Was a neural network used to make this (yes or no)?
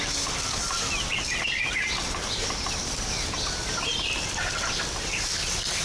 no